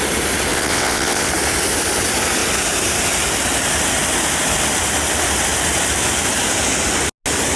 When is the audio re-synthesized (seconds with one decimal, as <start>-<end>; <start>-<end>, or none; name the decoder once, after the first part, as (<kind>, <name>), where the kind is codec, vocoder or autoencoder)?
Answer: 0.5-1.3 (vocoder, WaveNeXt)